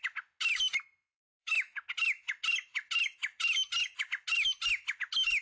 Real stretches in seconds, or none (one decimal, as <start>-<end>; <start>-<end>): 0.0-1.2; 1.8-5.4